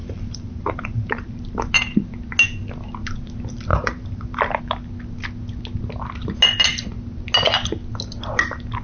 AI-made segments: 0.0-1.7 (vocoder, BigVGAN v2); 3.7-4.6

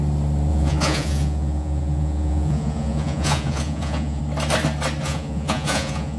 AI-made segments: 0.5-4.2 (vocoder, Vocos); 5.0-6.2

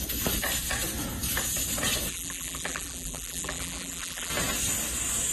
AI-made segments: 2.1-4.3 (vocoder, BigVGAN v2)

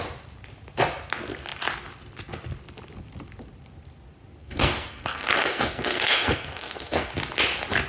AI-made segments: 4.4-7.1 (codec, SNAC)

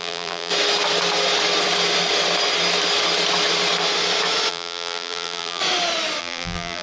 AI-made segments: 0.0-0.5 (vocoder, BigVGAN v2); 4.5-5.6; 6.2-6.8

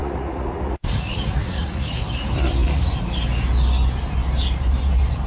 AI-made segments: 0.0-2.0 (vocoder, Vocos)